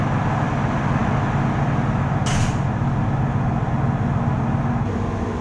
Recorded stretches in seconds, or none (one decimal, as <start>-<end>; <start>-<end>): 0.0-5.4